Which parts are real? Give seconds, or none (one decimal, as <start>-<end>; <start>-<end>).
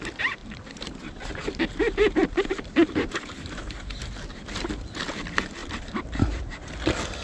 0.0-0.4; 4.7-5.6; 6.7-7.2